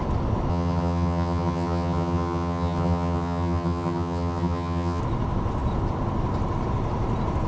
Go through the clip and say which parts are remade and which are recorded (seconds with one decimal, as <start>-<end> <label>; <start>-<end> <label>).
0.0-0.5 recorded; 0.5-5.0 remade; 5.0-7.5 recorded